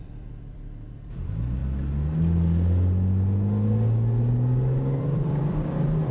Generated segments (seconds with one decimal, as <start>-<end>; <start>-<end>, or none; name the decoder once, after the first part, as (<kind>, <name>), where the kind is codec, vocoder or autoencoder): 0.0-1.6 (vocoder, BigVGAN v2); 5.0-6.1